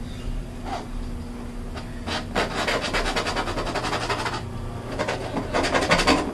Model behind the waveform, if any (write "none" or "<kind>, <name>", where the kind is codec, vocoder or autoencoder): none